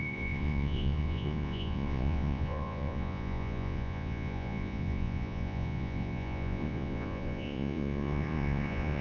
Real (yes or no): no